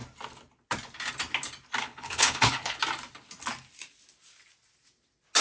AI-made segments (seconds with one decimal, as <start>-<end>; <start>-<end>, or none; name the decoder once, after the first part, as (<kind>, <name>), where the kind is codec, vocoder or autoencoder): 1.8-2.8 (codec, HILCodec)